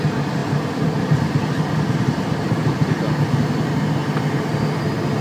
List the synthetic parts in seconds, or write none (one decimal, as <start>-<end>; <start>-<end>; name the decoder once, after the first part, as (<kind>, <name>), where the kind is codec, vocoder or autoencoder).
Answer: none